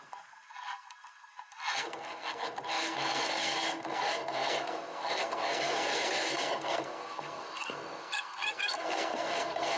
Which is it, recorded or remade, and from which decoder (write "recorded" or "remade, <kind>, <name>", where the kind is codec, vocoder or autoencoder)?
remade, codec, SNAC